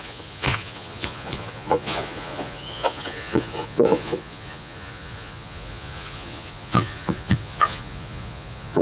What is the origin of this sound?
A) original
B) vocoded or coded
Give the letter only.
B